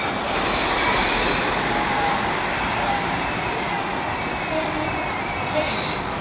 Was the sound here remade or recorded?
remade